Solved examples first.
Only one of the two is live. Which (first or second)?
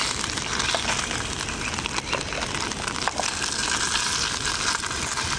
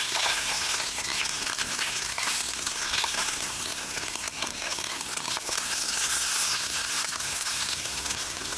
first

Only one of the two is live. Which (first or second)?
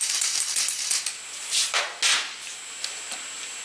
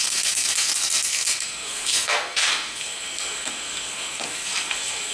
first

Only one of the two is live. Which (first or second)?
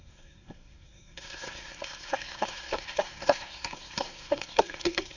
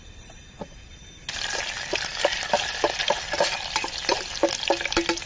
second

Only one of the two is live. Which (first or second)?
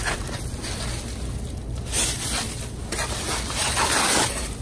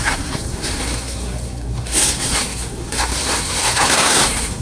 first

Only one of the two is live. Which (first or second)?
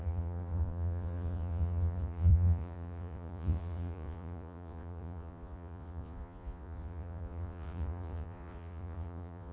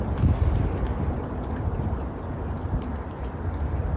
second